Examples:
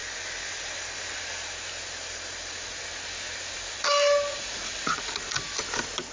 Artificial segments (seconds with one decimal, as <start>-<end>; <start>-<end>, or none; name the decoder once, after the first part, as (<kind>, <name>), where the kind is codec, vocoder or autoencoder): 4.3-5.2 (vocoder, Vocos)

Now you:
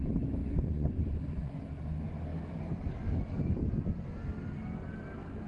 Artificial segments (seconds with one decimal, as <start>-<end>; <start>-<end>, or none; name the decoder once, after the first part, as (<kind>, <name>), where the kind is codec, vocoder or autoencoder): 0.4-1.6 (vocoder, Vocos)

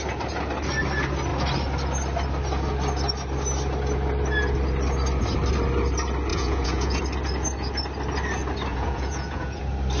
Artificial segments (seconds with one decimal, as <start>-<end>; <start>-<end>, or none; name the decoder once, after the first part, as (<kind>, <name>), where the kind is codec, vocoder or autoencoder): 6.3-7.0 (vocoder, Vocos); 8.7-9.6

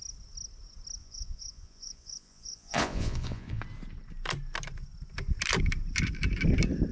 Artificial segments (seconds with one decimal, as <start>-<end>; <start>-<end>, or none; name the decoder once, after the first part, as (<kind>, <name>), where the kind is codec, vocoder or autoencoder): 1.0-3.6 (vocoder, Vocos)

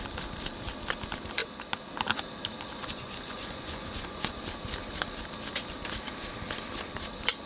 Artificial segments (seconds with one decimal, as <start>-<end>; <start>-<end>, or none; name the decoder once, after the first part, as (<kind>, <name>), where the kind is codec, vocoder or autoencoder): 2.8-4.4 (vocoder, Vocos)

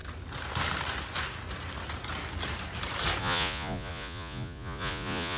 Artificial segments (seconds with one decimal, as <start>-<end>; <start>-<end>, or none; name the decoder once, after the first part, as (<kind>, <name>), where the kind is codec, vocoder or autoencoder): 3.2-5.4 (vocoder, Vocos)

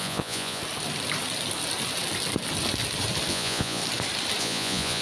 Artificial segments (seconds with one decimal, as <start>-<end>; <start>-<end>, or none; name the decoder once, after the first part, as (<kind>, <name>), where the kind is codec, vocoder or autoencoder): 0.0-0.6 (vocoder, Vocos); 3.3-3.8; 4.4-5.0